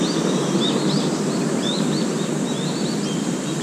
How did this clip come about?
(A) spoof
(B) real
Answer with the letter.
B